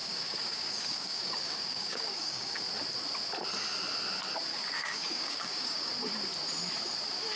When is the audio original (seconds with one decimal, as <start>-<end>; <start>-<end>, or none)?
2.6-4.5; 5.9-7.4